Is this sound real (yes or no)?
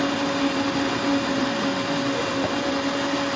yes